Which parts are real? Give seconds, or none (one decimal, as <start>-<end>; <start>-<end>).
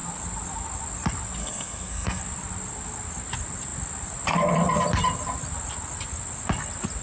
0.0-1.4; 2.2-7.0